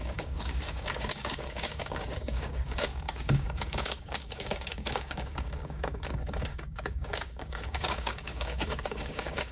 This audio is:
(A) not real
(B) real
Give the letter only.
A